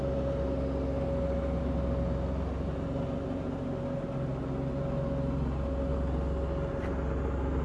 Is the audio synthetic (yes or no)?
no